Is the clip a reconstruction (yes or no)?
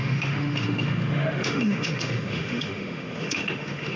yes